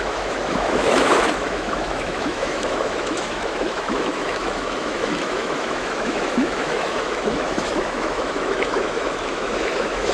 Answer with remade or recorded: remade